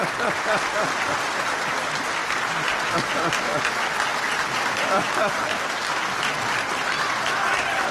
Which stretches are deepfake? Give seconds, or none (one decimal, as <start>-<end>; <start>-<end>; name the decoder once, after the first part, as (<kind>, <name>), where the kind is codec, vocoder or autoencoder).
4.1-7.9 (vocoder, BigVGAN v2)